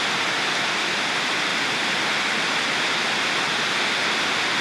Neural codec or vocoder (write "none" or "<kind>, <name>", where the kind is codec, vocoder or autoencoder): none